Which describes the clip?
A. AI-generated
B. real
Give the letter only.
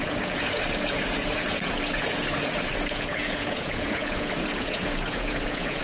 A